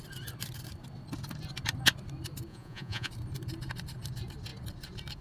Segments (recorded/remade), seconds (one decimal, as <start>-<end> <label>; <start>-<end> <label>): 0.0-2.5 recorded; 2.5-3.1 remade; 3.1-5.2 recorded